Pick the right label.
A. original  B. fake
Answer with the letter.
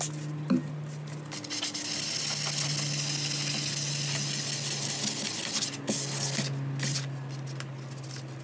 A